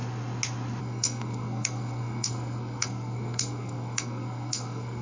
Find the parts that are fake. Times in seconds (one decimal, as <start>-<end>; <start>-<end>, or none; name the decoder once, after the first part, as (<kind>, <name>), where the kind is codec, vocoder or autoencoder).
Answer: 0.8-5.0 (codec, SNAC)